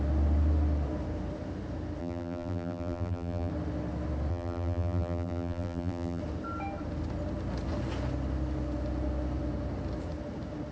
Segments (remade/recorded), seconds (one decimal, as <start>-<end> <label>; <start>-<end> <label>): 0.0-2.0 recorded; 2.0-3.5 remade; 3.5-4.3 recorded; 4.3-6.2 remade; 6.2-10.7 recorded